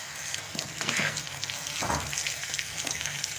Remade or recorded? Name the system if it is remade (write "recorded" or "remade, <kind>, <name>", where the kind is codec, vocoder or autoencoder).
remade, codec, SNAC